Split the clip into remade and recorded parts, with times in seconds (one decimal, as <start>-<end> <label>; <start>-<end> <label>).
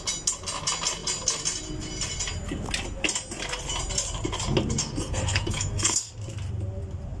0.0-4.8 recorded; 4.8-6.1 remade; 6.1-7.2 recorded